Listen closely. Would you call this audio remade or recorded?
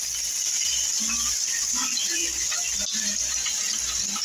recorded